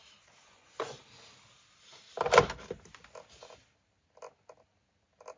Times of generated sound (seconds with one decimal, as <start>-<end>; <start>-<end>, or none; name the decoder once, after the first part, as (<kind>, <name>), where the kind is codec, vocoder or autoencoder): 0.4-1.0 (vocoder, Vocos)